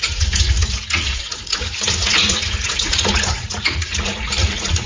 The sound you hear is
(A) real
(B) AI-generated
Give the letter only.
B